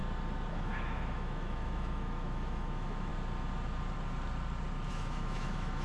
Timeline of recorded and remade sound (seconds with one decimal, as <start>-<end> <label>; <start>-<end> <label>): 0.0-0.5 recorded; 0.5-3.1 remade; 3.1-4.9 recorded; 4.9-5.8 remade